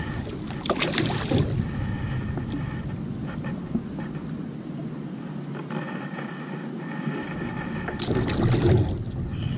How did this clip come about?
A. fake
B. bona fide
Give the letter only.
B